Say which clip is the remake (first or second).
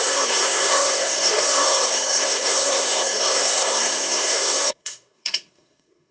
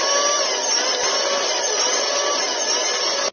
first